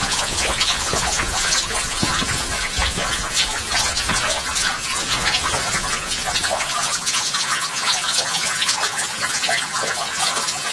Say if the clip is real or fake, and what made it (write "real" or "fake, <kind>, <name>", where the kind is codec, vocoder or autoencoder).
fake, vocoder, Vocos